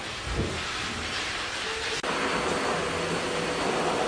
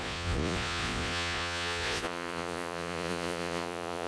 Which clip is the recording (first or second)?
first